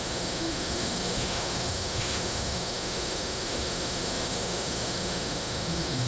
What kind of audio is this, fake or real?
fake